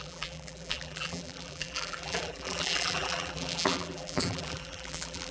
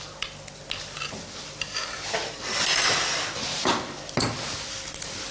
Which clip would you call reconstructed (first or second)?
first